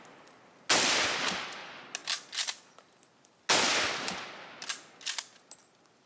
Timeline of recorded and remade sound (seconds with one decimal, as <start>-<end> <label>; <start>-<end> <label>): 0.0-6.1 recorded